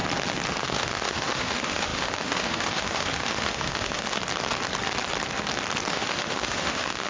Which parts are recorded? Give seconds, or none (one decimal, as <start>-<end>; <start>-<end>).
0.0-0.6; 4.2-5.9